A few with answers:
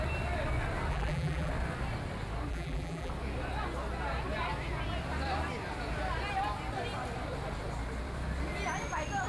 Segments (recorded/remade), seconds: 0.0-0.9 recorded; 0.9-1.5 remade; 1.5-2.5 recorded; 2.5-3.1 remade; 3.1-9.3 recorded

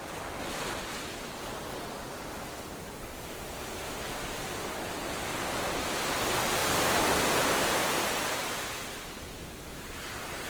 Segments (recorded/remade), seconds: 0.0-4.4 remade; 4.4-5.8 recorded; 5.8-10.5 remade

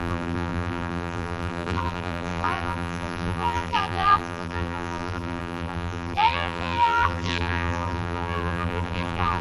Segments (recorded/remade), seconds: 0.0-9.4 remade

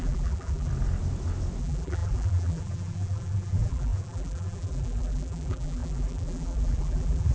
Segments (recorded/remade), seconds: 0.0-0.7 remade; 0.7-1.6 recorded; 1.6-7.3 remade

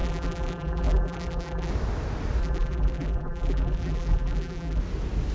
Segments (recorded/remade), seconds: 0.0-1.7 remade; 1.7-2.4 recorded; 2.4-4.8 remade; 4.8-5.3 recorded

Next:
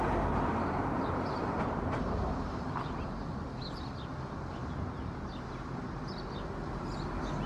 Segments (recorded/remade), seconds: 0.0-1.4 recorded; 1.4-3.2 remade; 3.2-7.5 recorded

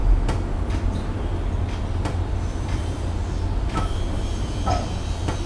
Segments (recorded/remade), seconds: 0.0-0.8 recorded; 0.8-3.2 remade; 3.2-3.8 recorded; 3.8-5.5 remade